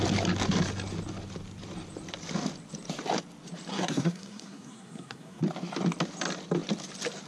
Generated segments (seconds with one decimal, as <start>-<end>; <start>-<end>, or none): 3.7-5.4

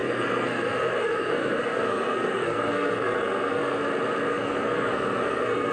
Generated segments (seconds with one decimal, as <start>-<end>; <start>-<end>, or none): 0.0-3.8; 4.3-5.7